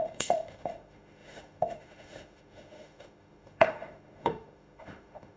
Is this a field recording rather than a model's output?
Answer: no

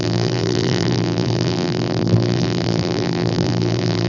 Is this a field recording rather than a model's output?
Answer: no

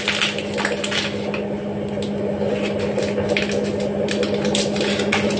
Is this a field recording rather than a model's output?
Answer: yes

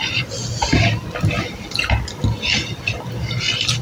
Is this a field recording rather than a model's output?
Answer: yes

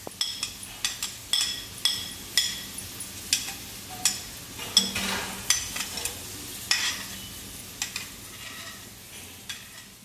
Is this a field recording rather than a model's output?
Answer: yes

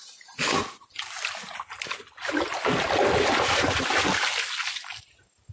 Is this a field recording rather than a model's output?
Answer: yes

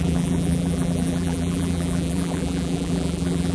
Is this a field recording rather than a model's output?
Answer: no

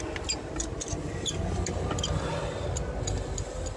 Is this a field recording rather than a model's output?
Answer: yes